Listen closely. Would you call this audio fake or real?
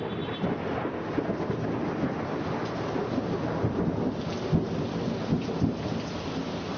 real